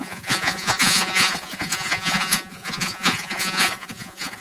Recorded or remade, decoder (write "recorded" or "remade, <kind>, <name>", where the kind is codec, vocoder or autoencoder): remade, vocoder, Vocos